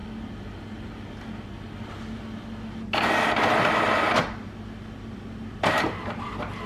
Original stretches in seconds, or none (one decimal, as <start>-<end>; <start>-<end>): 0.0-6.7